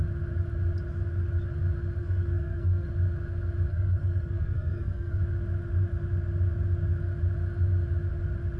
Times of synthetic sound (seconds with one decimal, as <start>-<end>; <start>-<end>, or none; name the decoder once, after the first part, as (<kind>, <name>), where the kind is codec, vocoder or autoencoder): 2.0-2.9 (codec, SNAC); 3.7-5.2